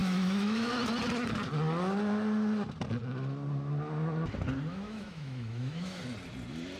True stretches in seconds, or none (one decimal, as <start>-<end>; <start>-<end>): 0.7-4.7; 6.0-6.8

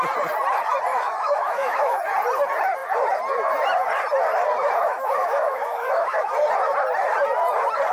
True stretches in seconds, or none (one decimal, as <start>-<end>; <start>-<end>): 0.0-0.9; 2.0-4.8; 6.3-7.9

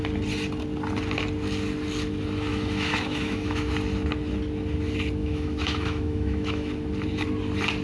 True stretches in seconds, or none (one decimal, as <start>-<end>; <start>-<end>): 0.0-2.5; 3.7-5.2; 6.7-7.8